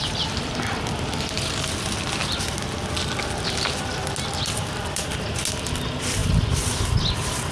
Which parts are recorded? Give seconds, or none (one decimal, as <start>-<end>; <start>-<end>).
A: 0.0-7.5